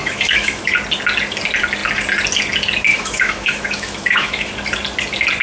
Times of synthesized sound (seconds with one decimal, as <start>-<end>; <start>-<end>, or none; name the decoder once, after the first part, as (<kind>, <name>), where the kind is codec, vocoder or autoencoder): 0.0-0.7 (autoencoder, DAC-VAE); 2.9-4.5